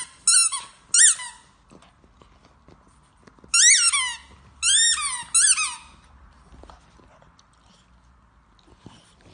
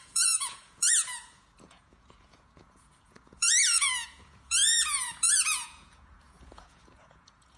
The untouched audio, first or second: first